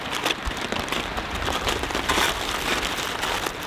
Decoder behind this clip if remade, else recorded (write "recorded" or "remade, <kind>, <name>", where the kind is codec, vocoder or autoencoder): recorded